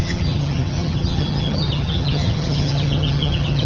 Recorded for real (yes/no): no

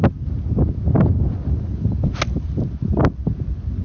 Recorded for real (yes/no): yes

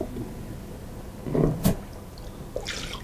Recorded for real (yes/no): yes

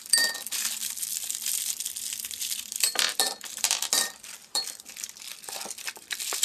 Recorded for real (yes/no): no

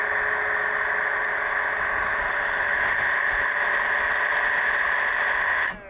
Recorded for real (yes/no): yes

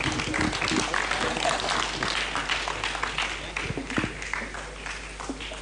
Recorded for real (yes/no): yes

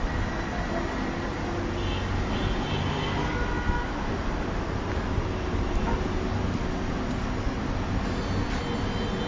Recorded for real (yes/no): yes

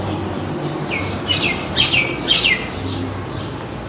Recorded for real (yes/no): yes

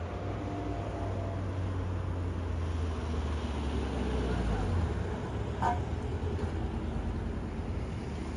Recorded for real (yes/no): yes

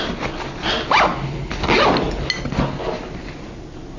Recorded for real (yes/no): yes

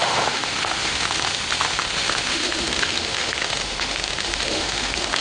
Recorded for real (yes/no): no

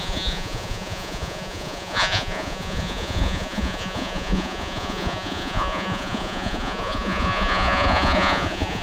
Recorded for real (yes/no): no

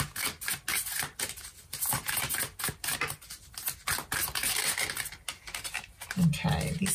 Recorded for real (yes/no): yes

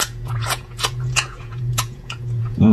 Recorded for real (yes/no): no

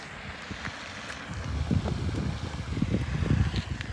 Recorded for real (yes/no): yes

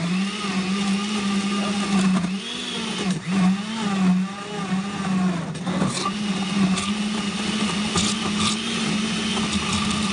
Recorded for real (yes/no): yes